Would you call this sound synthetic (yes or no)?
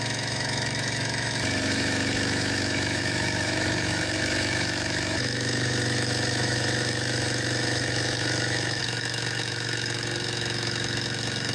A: yes